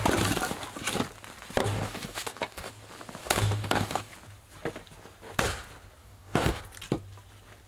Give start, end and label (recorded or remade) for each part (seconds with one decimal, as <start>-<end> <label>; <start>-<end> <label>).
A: 0.0-1.6 recorded; 1.6-2.7 remade; 2.7-3.2 recorded; 3.2-4.1 remade; 4.1-6.0 recorded; 6.0-6.6 remade; 6.6-7.7 recorded